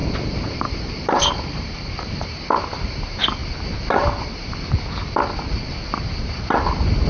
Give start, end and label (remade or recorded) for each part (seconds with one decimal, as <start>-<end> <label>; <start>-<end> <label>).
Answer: 0.0-2.4 remade; 2.4-7.1 recorded

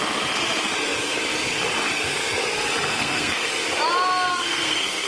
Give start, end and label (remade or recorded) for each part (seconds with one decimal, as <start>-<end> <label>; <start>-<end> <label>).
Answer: 0.0-2.9 recorded; 2.9-3.5 remade; 3.5-4.3 recorded; 4.3-5.1 remade

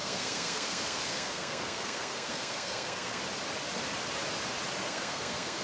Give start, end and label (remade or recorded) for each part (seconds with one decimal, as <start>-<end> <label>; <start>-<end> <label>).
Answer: 0.0-3.2 remade; 3.2-4.8 recorded; 4.8-5.6 remade

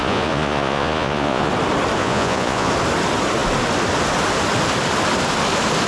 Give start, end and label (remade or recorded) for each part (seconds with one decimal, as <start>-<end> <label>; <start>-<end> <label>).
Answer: 0.0-1.5 remade; 1.5-2.0 recorded; 2.0-2.7 remade; 2.7-5.9 recorded

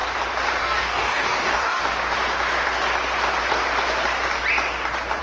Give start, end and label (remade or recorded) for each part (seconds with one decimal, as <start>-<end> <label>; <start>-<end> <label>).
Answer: 0.0-0.6 recorded; 0.6-1.8 remade; 1.8-5.2 recorded